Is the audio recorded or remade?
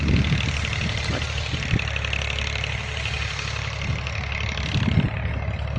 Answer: recorded